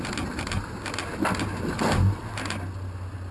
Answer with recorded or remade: recorded